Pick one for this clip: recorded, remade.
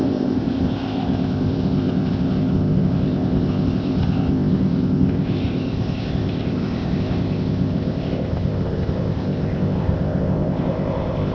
remade